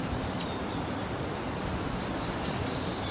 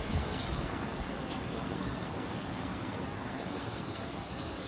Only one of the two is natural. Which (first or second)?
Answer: first